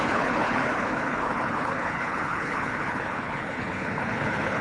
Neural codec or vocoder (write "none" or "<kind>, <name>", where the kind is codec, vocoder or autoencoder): codec, HILCodec